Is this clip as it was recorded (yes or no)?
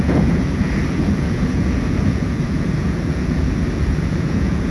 no